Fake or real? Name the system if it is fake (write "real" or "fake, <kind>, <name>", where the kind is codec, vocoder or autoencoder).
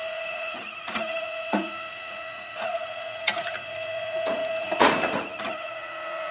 fake, vocoder, Vocos